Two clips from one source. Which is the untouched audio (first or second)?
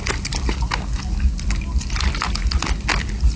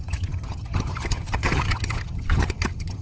first